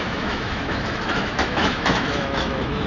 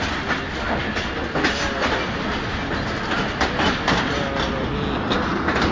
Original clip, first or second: second